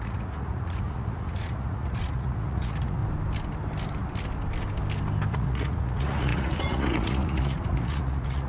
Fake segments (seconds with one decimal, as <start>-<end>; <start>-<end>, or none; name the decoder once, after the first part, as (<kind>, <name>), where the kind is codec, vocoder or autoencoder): 0.0-3.0 (vocoder, Vocos); 5.3-8.5